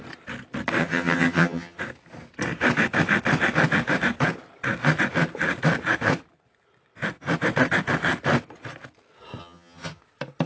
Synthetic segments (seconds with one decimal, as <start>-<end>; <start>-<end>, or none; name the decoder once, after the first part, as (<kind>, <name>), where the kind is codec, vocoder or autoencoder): 0.8-1.8 (vocoder, HiFi-GAN); 9.4-10.0